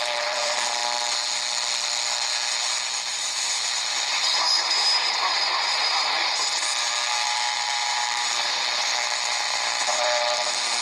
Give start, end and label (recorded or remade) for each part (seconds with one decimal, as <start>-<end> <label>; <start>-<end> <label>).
0.0-0.8 remade; 0.8-3.1 recorded; 3.1-10.8 remade